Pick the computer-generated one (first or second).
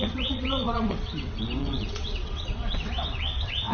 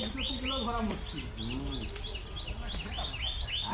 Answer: first